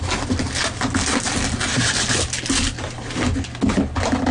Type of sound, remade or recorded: recorded